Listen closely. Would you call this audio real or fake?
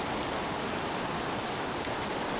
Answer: real